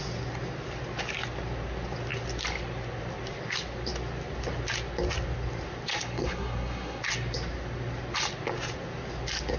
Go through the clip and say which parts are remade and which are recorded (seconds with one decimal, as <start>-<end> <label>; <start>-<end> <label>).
0.0-5.9 recorded; 5.9-7.0 remade; 7.0-9.6 recorded